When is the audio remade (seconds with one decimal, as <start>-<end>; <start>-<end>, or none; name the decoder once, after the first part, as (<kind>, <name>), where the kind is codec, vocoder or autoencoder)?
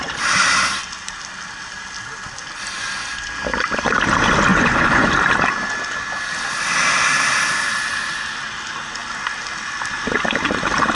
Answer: 4.5-5.1 (vocoder, Vocos)